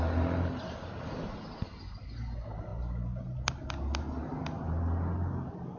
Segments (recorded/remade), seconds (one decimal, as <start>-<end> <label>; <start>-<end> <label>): 0.0-5.8 recorded

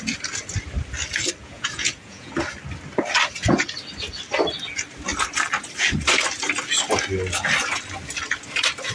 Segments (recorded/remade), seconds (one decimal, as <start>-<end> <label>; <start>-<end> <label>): 0.0-1.4 recorded; 1.4-2.3 remade; 2.3-8.9 recorded

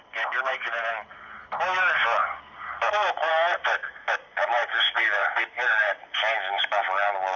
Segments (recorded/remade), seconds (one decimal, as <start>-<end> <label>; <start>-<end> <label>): 0.0-7.4 recorded

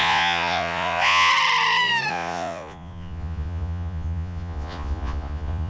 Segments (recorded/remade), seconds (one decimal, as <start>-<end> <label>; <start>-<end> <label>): 0.0-1.3 remade; 1.3-2.1 recorded; 2.1-5.7 remade

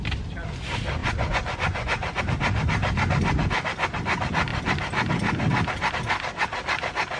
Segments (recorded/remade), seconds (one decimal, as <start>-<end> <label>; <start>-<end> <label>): 0.0-1.0 recorded; 1.0-2.2 remade; 2.2-7.2 recorded

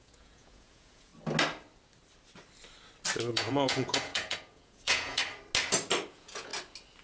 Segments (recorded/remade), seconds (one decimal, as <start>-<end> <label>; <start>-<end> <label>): 0.0-1.1 remade; 1.1-3.3 recorded; 3.3-5.2 remade; 5.2-6.1 recorded; 6.1-6.5 remade; 6.5-7.0 recorded

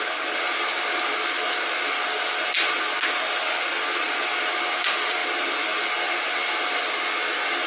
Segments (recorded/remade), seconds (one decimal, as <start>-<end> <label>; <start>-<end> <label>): 0.0-7.7 recorded

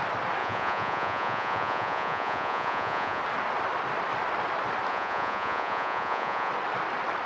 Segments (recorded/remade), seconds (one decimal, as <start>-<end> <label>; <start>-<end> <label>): 0.0-0.4 recorded; 0.4-3.2 remade; 3.2-4.9 recorded; 4.9-6.5 remade; 6.5-7.3 recorded